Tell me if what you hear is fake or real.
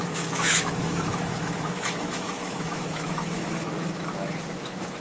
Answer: fake